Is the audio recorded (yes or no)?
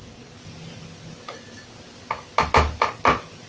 yes